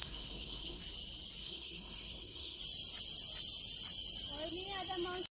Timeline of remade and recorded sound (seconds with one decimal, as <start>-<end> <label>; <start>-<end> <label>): 0.0-0.8 remade; 0.8-1.4 recorded; 1.4-2.6 remade; 2.6-5.3 recorded